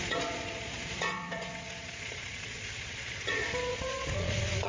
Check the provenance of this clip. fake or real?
fake